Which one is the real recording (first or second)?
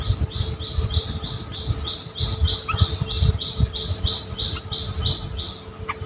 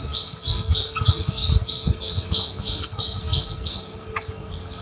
first